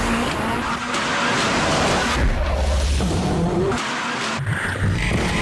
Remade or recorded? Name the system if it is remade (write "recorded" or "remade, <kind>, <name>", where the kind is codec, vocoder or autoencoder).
recorded